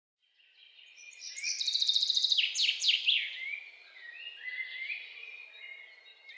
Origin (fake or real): real